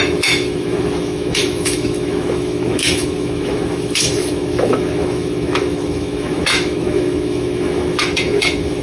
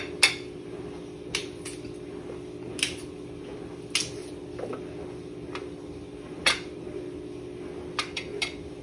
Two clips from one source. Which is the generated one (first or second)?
first